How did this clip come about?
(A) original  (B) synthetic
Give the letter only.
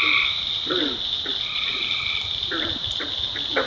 A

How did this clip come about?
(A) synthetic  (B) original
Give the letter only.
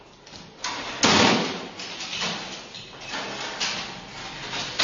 B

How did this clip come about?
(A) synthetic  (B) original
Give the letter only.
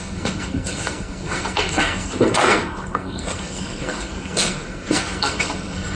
A